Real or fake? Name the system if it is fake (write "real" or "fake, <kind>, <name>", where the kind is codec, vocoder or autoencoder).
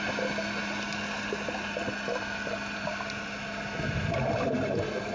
real